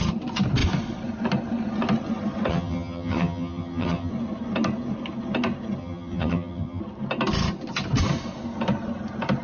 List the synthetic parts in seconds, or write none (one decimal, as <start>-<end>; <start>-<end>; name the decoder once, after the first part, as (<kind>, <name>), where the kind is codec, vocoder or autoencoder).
2.5-4.1 (vocoder, HiFi-GAN); 5.8-6.8